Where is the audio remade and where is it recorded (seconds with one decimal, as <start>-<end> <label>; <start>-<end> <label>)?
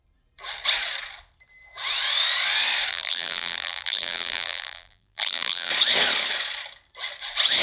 0.0-2.9 recorded; 2.9-5.7 remade; 5.7-7.6 recorded